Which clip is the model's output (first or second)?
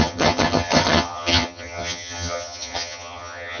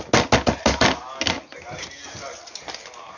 first